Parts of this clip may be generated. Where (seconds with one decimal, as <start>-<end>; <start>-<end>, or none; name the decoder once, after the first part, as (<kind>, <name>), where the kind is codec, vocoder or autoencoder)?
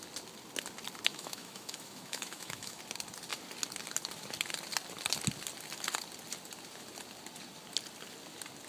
1.1-2.8 (autoencoder, DAC-VAE)